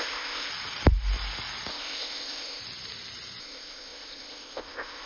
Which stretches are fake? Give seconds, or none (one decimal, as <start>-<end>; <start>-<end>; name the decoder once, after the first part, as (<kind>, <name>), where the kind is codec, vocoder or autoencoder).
0.0-0.5 (codec, ZipCodec); 1.7-2.6; 3.4-5.1

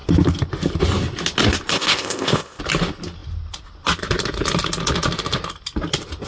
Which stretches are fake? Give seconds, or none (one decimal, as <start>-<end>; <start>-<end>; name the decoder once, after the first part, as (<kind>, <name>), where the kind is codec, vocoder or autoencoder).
1.7-2.6 (codec, ZipCodec)

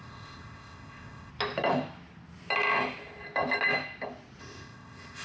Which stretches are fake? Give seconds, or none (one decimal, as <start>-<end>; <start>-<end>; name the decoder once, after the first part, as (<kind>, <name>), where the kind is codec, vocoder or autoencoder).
0.0-1.3 (codec, ZipCodec); 4.4-5.2

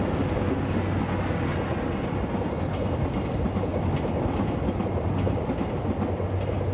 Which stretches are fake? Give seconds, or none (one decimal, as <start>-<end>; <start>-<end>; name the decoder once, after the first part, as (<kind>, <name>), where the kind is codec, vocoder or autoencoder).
none

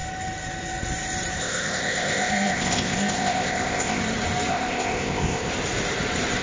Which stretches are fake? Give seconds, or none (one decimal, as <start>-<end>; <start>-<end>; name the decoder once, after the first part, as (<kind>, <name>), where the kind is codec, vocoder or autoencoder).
1.4-4.0 (codec, ZipCodec); 4.5-5.5

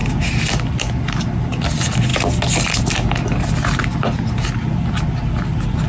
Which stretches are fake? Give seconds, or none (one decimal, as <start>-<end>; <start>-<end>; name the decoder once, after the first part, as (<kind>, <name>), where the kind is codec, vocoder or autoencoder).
none